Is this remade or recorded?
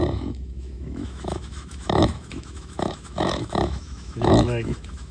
remade